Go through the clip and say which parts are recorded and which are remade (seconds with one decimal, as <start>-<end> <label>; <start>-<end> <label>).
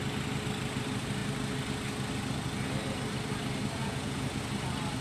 0.0-3.8 recorded; 3.8-4.4 remade; 4.4-5.0 recorded